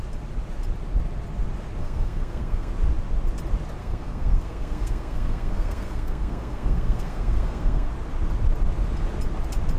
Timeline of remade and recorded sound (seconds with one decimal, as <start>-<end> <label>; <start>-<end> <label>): 0.0-1.8 recorded; 1.8-2.7 remade; 2.7-3.8 recorded; 3.8-7.9 remade; 7.9-9.8 recorded